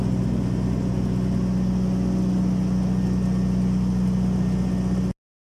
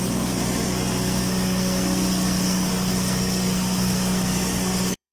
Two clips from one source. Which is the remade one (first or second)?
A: second